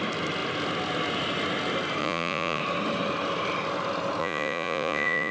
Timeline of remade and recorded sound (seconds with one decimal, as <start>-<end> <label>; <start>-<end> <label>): 0.0-2.0 recorded; 2.0-2.6 remade; 2.6-4.2 recorded; 4.2-5.3 remade